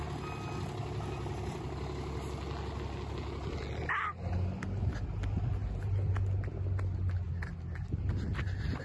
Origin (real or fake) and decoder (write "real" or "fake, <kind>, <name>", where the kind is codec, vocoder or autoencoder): real